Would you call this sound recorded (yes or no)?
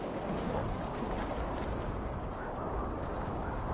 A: no